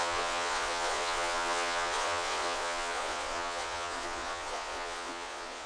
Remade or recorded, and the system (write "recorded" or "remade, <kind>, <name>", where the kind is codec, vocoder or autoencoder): remade, vocoder, Vocos